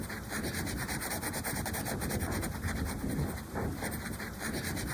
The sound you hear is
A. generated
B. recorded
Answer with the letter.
A